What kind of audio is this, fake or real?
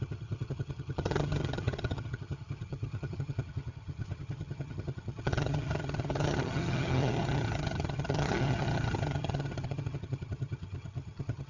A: fake